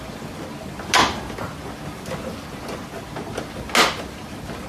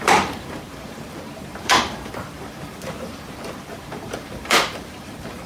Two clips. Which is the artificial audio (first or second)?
second